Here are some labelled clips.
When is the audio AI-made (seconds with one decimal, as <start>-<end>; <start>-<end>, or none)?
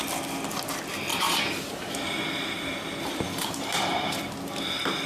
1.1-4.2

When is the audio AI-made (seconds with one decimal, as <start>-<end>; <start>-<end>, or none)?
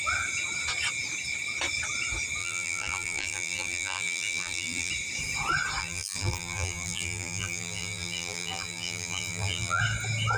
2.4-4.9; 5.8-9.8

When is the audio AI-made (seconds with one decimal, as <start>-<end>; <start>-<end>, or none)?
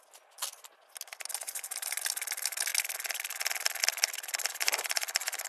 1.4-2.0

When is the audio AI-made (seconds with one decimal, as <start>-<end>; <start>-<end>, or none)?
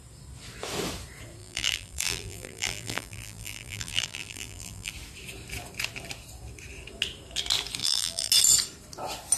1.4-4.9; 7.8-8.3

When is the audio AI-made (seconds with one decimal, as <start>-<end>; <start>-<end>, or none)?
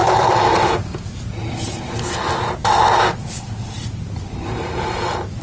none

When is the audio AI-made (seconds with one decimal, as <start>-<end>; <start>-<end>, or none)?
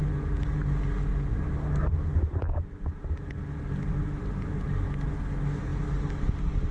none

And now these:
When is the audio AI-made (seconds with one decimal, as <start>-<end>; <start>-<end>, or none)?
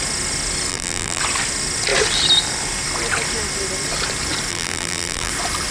0.7-1.2; 4.5-5.3